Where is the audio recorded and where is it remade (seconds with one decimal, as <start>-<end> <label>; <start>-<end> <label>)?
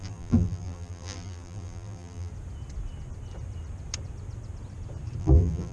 0.0-2.3 remade; 2.3-5.2 recorded; 5.2-5.7 remade